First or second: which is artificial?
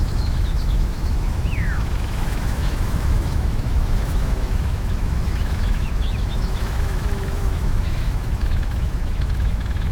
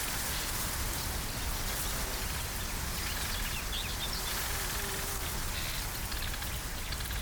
first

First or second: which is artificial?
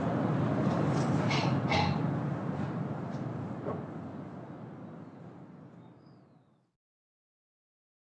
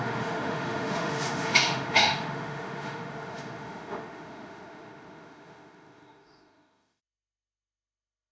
second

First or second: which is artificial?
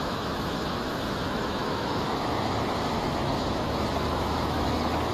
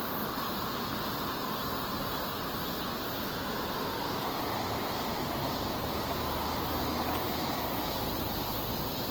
first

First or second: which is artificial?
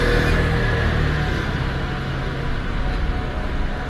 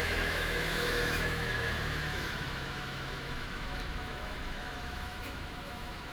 second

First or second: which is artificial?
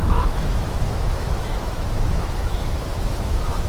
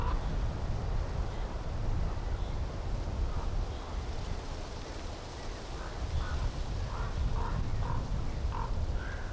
first